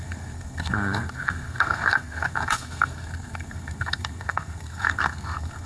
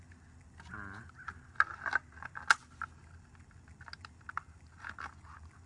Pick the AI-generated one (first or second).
first